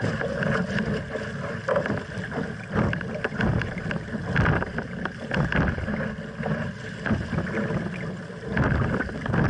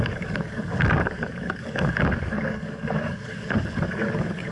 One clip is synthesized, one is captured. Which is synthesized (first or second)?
second